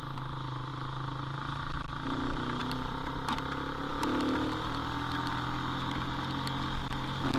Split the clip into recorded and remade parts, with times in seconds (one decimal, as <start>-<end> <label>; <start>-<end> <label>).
0.0-2.6 recorded; 2.6-3.3 remade; 3.3-7.4 recorded